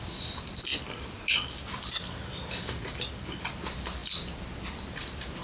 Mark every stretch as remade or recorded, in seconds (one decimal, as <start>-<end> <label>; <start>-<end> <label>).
0.0-5.4 recorded